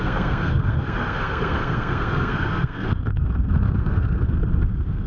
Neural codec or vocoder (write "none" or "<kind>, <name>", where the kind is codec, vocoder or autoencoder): codec, SNAC